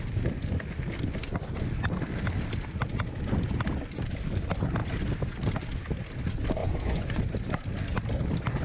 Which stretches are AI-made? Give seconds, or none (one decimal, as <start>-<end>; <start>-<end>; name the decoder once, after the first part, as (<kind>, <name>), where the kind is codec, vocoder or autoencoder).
6.6-7.2 (vocoder, Vocos)